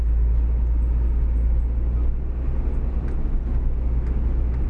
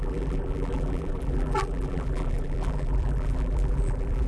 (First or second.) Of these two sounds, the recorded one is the first